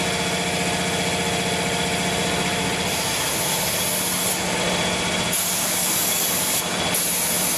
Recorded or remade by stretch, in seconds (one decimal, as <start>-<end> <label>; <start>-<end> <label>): 0.0-5.6 recorded; 5.6-6.6 remade; 6.6-7.6 recorded